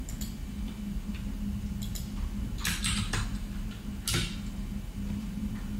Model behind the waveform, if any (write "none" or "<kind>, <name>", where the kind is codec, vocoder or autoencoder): none